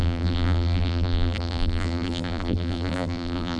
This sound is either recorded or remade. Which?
remade